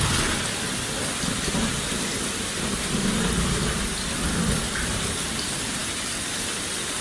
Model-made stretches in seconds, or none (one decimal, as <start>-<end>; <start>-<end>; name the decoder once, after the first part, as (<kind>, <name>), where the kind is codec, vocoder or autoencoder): none